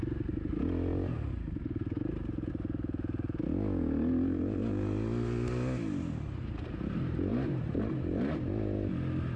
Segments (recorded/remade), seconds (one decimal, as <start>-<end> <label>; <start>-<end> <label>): 0.0-7.3 recorded; 7.3-8.4 remade; 8.4-9.4 recorded